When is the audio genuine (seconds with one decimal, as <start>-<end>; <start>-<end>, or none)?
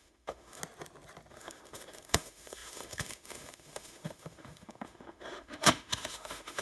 0.6-1.3